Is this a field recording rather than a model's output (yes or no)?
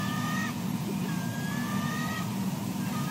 yes